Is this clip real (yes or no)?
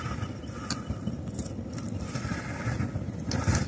yes